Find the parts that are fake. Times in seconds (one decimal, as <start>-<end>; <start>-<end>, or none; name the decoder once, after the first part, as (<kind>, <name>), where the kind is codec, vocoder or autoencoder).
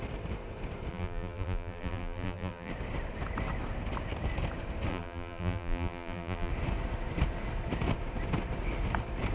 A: 0.9-2.7 (vocoder, BigVGAN v2); 4.9-6.5